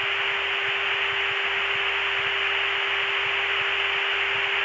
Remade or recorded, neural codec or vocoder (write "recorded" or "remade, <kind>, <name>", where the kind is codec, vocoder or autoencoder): recorded